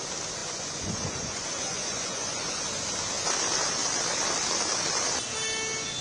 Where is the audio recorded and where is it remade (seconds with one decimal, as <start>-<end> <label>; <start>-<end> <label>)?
0.0-0.4 recorded; 0.4-2.6 remade; 2.6-6.0 recorded